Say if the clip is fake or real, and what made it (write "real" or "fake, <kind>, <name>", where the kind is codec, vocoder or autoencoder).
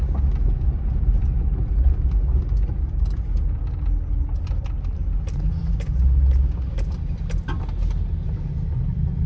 real